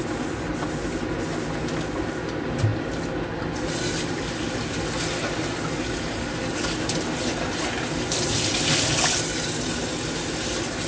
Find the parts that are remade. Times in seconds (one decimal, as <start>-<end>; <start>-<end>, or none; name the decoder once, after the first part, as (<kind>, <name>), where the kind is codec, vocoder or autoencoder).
none